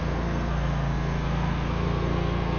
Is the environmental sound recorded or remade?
remade